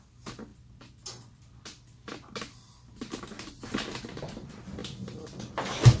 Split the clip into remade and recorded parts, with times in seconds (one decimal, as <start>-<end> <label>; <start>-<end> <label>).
0.0-6.0 recorded